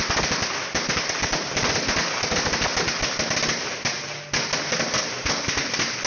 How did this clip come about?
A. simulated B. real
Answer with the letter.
B